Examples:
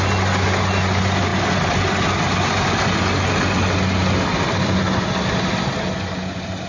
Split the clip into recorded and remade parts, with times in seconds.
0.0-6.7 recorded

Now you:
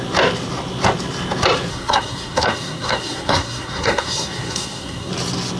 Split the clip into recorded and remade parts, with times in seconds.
0.0-1.7 recorded; 1.7-5.1 remade; 5.1-5.6 recorded

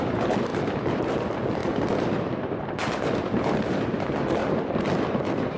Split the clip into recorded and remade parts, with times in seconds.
0.0-5.6 recorded

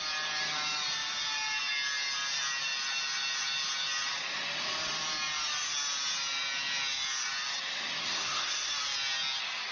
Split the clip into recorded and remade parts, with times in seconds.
0.0-8.0 recorded; 8.0-8.7 remade; 8.7-9.7 recorded

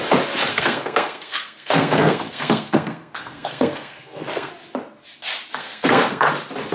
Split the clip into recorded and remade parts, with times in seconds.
0.0-0.5 recorded; 0.5-4.5 remade; 4.5-5.6 recorded; 5.6-6.3 remade; 6.3-6.7 recorded

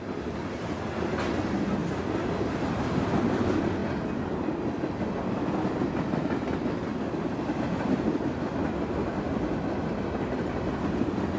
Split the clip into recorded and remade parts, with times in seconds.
0.0-11.4 recorded

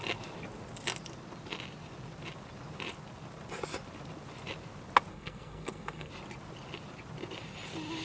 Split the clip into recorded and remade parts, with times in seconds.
0.0-5.1 recorded; 5.1-6.1 remade; 6.1-8.0 recorded